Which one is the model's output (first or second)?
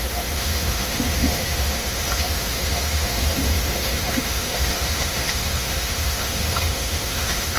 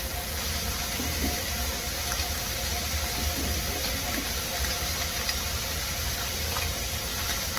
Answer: first